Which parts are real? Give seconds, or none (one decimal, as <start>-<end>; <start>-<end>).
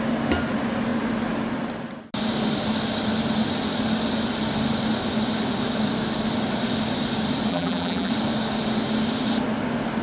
0.0-7.5; 8.1-10.0